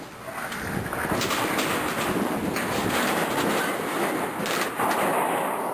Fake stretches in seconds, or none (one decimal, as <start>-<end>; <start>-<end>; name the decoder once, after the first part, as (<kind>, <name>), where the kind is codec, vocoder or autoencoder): 5.1-5.7 (autoencoder, DAC-VAE)